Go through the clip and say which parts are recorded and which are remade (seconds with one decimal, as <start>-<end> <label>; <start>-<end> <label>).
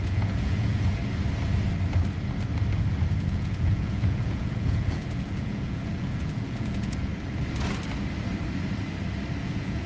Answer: 0.0-1.0 remade; 1.0-3.3 recorded; 3.3-7.1 remade; 7.1-9.4 recorded; 9.4-9.9 remade